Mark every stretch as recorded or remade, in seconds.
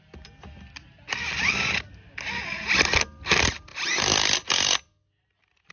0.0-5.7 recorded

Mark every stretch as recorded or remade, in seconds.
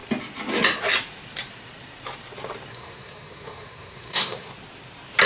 0.0-2.7 recorded; 2.7-4.5 remade; 4.5-5.3 recorded